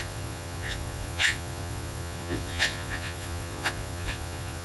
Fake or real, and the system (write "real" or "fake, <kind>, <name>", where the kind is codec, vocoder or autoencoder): fake, vocoder, Vocos